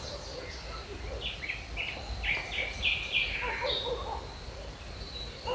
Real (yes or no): yes